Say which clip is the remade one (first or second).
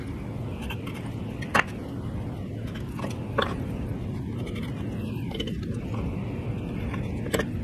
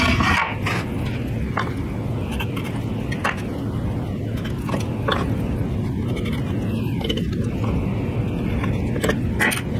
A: first